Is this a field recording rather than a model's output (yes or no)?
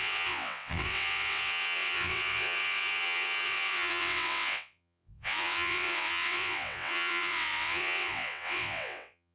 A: no